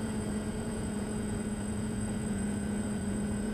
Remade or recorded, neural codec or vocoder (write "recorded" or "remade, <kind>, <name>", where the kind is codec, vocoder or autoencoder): remade, vocoder, Vocos